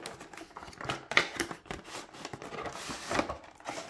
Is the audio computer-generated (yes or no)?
no